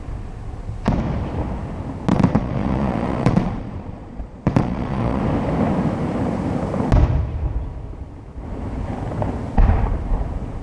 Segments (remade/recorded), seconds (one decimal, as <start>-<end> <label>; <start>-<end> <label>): 0.0-2.1 recorded; 2.1-5.2 remade; 5.2-10.6 recorded